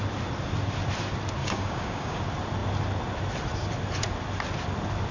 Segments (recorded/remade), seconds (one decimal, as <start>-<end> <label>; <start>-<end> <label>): 0.0-1.4 recorded; 1.4-2.2 remade; 2.2-5.1 recorded